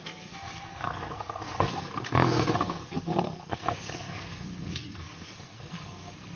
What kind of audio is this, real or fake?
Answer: fake